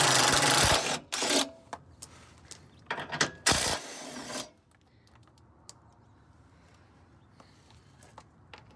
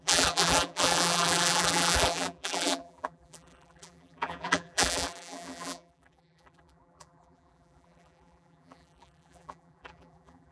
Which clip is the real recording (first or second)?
first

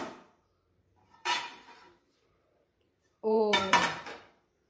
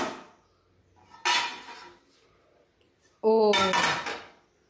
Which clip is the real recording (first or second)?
second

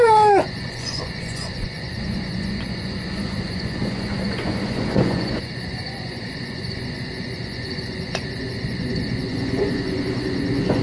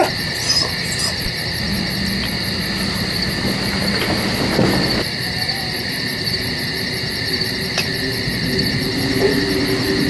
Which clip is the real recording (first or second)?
second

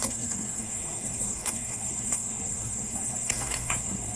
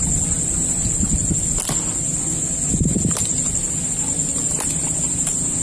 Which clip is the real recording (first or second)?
second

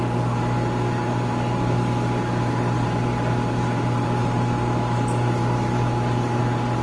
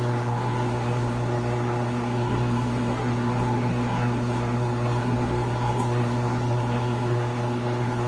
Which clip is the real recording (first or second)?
first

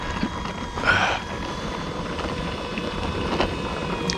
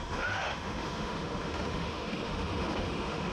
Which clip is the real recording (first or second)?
first